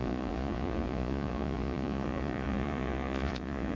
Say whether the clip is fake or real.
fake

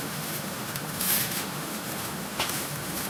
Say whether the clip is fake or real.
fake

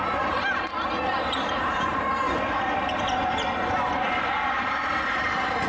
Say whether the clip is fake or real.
fake